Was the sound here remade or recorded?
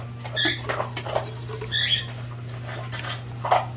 recorded